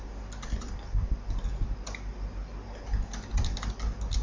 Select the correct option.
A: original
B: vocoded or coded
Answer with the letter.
A